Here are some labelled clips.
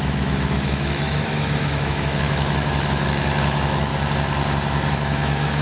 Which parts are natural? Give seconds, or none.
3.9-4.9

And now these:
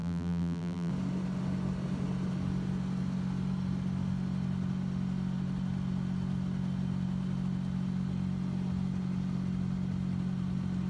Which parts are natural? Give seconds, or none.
0.9-10.9

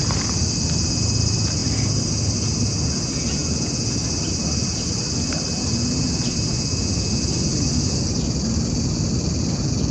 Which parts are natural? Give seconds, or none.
0.0-9.9